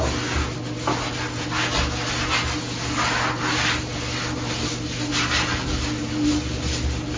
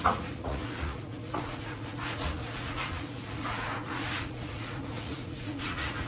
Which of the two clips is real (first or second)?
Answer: first